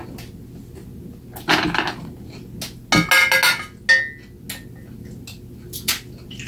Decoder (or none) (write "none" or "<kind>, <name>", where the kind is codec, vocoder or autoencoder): none